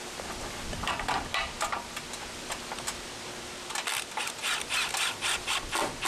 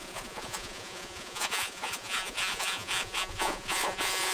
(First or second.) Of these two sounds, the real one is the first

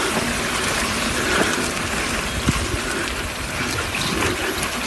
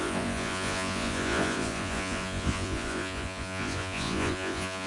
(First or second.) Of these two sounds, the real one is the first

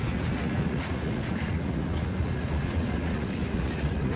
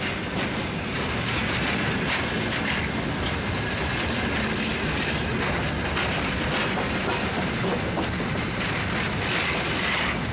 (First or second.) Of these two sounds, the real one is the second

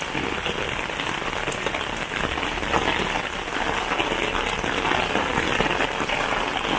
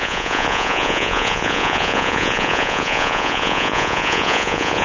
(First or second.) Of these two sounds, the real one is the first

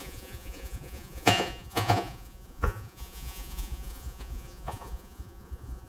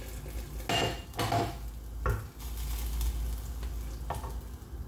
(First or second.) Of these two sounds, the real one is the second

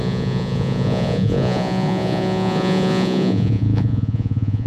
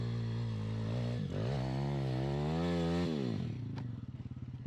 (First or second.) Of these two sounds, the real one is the second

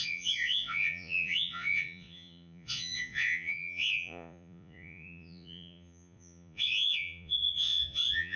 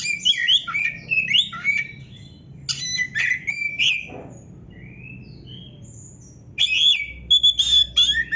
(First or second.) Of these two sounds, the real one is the second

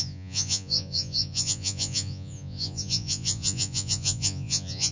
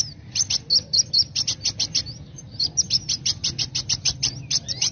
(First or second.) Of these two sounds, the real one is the second